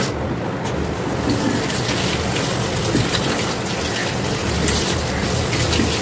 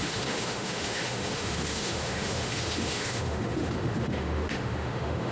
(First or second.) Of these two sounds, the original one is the first